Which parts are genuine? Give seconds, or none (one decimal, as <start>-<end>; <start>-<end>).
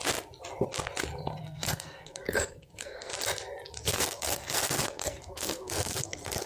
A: 0.0-1.4; 3.1-3.8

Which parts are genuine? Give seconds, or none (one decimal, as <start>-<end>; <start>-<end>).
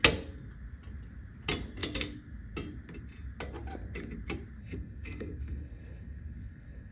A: 0.0-4.6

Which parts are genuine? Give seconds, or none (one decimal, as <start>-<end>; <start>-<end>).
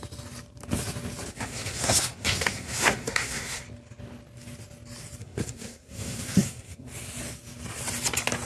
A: 0.0-1.3; 3.6-5.2; 6.9-8.5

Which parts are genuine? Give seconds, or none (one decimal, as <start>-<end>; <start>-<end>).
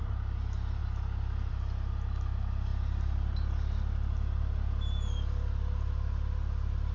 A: 0.0-6.9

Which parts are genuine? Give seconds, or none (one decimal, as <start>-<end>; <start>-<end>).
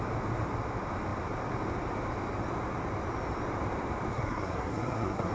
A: 0.0-4.1